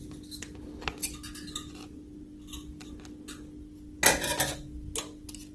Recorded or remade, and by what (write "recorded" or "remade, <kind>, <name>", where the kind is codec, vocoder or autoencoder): recorded